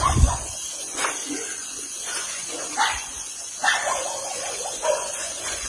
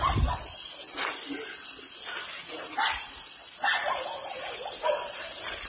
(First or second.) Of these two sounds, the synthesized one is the first